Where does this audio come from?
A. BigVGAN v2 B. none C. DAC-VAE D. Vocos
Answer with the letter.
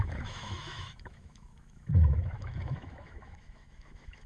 C